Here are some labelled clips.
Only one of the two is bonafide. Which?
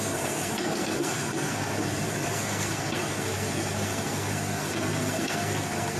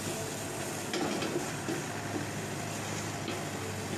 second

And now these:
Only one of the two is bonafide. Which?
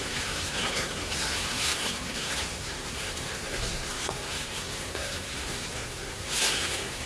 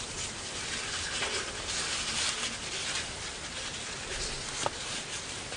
second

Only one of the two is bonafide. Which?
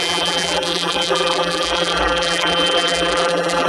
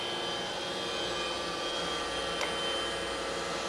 second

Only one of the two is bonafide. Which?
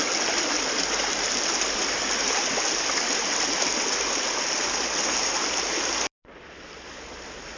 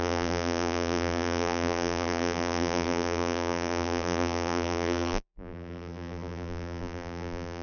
first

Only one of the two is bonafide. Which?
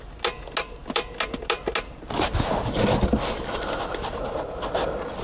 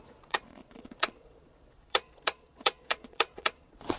first